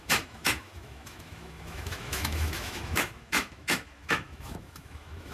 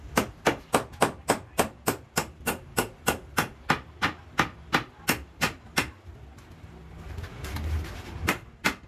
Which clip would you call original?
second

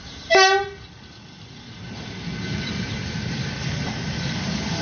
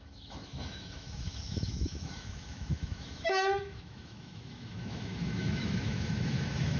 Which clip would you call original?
first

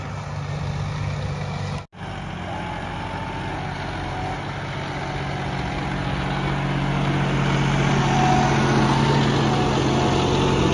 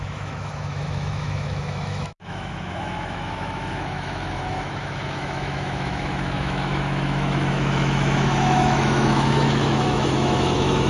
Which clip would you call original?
first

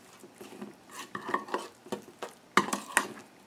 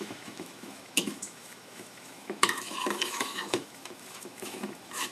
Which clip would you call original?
first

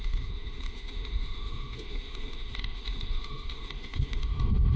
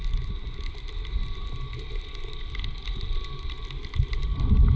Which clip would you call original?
second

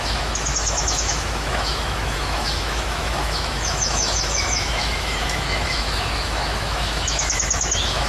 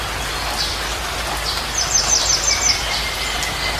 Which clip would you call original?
second